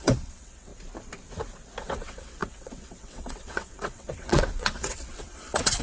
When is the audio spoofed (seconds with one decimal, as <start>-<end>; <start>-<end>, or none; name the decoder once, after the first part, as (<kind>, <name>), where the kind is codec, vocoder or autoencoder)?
0.0-0.7 (vocoder, WaveNeXt); 1.8-5.8